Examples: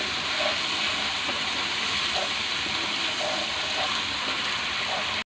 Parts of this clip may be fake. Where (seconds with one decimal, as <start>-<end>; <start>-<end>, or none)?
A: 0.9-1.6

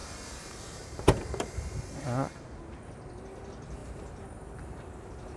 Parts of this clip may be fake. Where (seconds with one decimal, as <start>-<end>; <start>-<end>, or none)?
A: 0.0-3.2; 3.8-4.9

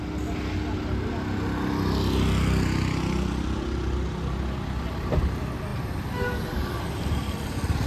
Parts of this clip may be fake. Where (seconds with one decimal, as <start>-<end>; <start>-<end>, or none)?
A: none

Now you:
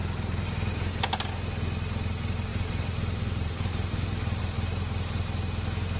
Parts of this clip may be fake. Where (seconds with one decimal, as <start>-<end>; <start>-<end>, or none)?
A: 2.5-4.4

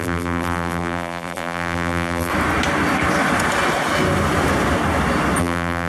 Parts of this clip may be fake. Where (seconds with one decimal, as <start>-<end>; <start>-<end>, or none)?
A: 0.0-2.3; 5.4-5.9

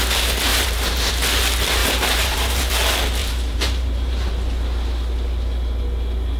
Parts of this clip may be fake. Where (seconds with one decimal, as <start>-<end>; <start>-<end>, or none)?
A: 0.5-1.1; 1.8-2.7; 3.2-4.3